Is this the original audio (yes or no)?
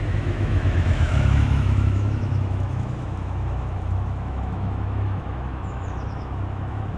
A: no